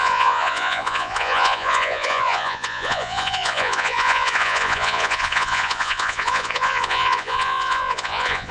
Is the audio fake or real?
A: fake